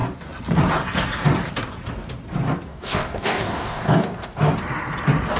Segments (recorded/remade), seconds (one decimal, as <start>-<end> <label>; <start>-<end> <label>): 0.0-2.7 recorded; 2.7-4.5 remade; 4.5-5.4 recorded

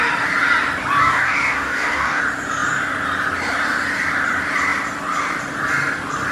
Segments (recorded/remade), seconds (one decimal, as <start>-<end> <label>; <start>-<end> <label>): 0.0-1.0 recorded; 1.0-2.2 remade; 2.2-6.3 recorded

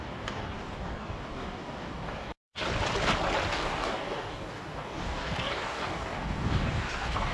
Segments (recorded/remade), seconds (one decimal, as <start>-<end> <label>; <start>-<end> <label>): 0.0-2.7 remade; 2.7-3.5 recorded; 3.5-7.3 remade

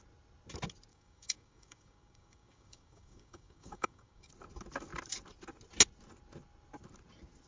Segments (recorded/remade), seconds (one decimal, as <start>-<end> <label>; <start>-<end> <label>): 0.0-0.9 recorded; 0.9-4.3 remade; 4.3-7.5 recorded